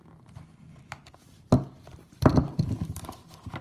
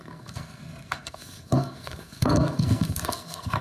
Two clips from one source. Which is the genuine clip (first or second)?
first